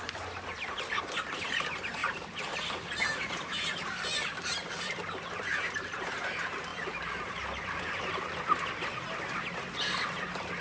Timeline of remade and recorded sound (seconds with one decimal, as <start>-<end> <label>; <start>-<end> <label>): 0.0-2.0 recorded; 2.0-4.9 remade; 4.9-6.7 recorded; 6.7-7.6 remade; 7.6-10.6 recorded